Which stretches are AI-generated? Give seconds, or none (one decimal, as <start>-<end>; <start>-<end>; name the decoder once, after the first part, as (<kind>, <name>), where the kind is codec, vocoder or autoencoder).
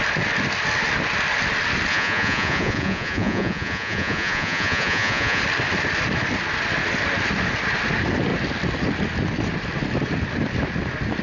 1.9-5.4 (vocoder, Vocos)